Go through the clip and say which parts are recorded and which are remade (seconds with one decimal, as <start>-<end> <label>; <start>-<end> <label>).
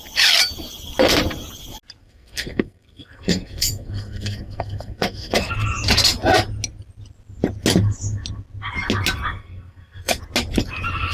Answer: 0.0-2.0 recorded; 2.0-5.5 remade; 5.5-9.4 recorded; 9.4-10.2 remade; 10.2-11.1 recorded